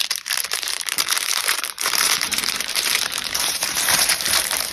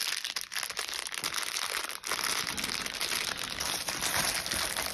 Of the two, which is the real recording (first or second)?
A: second